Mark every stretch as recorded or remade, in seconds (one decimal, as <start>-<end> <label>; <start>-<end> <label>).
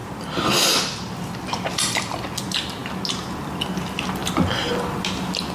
0.0-5.5 recorded